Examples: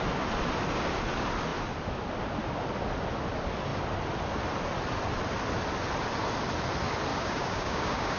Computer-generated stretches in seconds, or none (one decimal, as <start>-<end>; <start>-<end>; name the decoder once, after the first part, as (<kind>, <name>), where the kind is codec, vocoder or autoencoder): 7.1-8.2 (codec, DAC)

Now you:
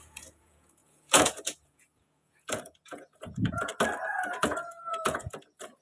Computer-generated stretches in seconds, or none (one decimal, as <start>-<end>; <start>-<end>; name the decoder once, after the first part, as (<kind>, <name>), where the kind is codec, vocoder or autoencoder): 0.0-3.7 (vocoder, Vocos); 4.3-5.8

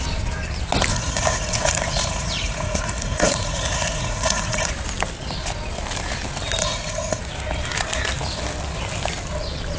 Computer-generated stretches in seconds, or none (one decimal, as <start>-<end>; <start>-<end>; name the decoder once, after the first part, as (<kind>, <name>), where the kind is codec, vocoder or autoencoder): 0.9-4.7 (vocoder, Vocos); 6.6-7.2